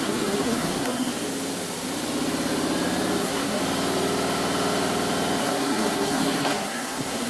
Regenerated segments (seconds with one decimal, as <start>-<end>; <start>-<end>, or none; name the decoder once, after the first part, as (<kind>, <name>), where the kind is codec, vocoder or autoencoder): 0.0-1.1 (codec, SNAC); 3.2-3.6; 5.4-7.3